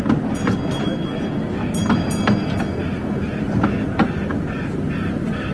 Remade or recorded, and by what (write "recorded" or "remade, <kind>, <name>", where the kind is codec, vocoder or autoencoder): recorded